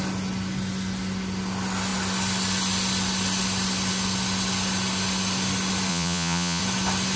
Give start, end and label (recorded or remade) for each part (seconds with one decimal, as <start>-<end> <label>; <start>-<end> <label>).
0.0-5.9 recorded; 5.9-6.6 remade; 6.6-7.2 recorded

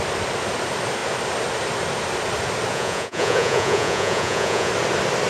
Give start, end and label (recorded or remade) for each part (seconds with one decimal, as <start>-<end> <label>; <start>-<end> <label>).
0.0-2.7 recorded; 2.7-4.7 remade; 4.7-5.3 recorded

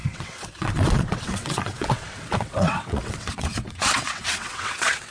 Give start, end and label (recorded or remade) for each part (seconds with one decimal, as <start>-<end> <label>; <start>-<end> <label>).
0.0-5.1 remade

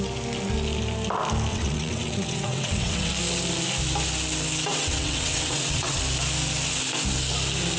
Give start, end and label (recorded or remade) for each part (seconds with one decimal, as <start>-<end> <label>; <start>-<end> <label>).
0.0-1.5 recorded; 1.5-3.1 remade; 3.1-4.7 recorded; 4.7-6.0 remade; 6.0-7.8 recorded